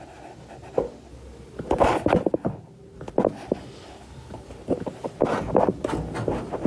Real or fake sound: real